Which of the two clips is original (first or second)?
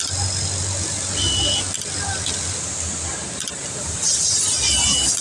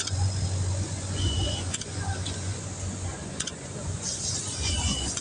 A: first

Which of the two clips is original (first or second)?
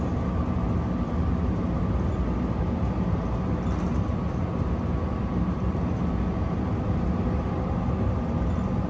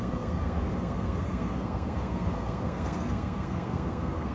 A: first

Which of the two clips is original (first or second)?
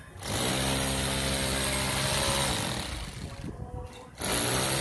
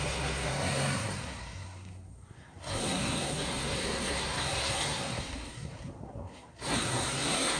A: first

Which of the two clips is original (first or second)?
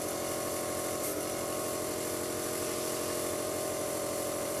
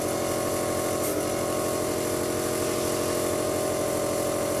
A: second